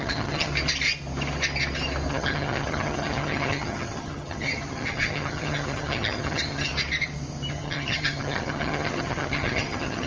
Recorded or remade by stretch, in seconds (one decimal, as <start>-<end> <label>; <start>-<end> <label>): 0.0-0.5 remade; 0.5-2.1 recorded; 2.1-6.7 remade; 6.7-7.5 recorded; 7.5-10.1 remade